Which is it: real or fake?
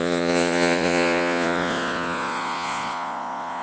fake